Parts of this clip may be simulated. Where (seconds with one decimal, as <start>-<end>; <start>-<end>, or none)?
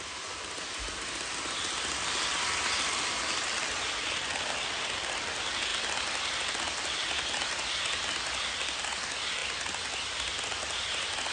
none